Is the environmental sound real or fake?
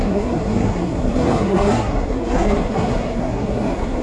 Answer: fake